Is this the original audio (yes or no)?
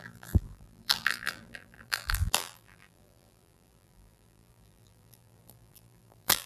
no